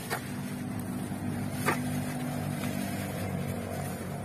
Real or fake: real